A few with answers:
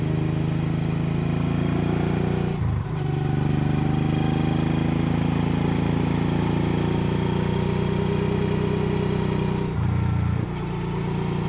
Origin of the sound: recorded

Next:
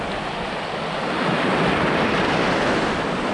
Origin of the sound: recorded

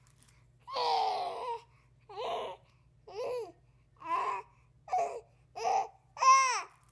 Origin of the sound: recorded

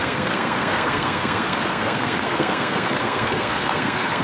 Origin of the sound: remade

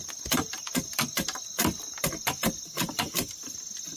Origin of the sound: recorded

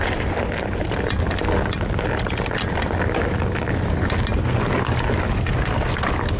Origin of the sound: recorded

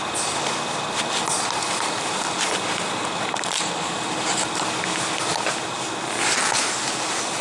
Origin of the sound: recorded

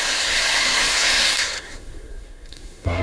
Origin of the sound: remade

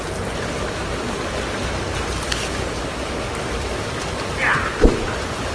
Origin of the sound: remade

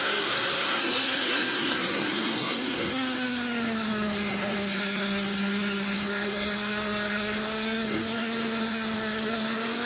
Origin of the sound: remade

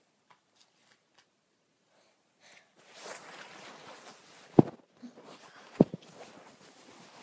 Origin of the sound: recorded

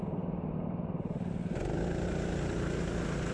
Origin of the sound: recorded